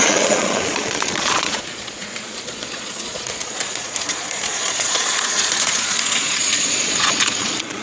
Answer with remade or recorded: remade